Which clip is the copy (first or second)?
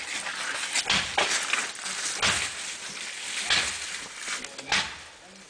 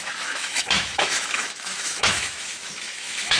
second